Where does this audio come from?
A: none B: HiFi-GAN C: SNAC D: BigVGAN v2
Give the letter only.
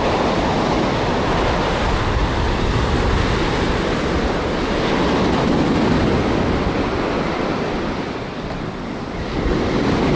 A